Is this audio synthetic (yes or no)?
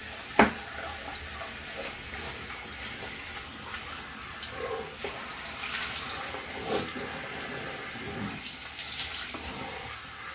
no